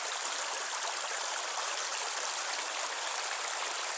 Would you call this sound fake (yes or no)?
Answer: yes